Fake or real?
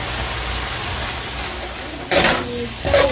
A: real